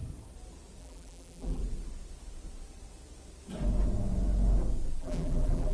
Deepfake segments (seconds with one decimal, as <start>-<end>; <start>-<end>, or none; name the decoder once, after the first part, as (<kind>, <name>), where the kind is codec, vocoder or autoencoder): 0.8-1.6 (vocoder, BigVGAN v2); 5.0-5.7